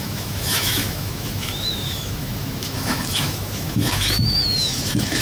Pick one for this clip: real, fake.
fake